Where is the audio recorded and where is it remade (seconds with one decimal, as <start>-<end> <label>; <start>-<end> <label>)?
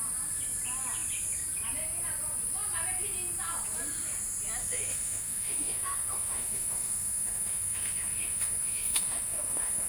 0.0-4.6 recorded; 4.6-9.9 remade